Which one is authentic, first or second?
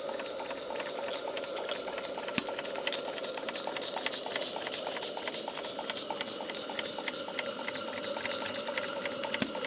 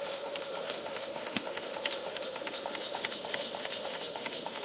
first